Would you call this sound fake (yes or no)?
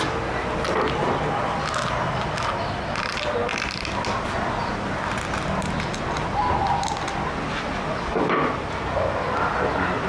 no